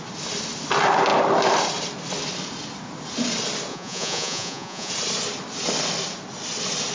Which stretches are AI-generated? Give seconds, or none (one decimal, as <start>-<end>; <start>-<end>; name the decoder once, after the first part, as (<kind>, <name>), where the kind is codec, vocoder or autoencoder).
3.7-4.9 (vocoder, Vocos)